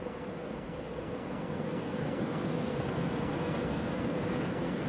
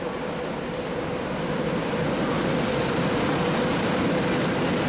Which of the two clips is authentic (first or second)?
second